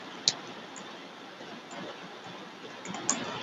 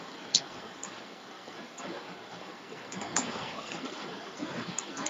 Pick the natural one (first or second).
first